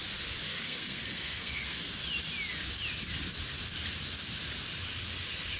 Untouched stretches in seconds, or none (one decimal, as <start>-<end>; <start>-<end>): 0.0-0.5; 2.0-5.6